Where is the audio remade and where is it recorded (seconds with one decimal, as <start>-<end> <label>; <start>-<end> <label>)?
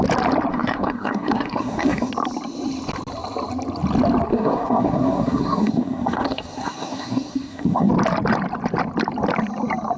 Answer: 0.0-0.5 recorded; 0.5-2.1 remade; 2.1-4.3 recorded; 4.3-7.9 remade; 7.9-10.0 recorded